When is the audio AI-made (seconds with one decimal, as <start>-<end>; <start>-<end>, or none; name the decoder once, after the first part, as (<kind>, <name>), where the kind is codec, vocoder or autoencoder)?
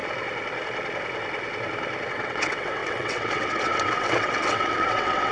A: 2.1-5.3 (vocoder, WaveNeXt)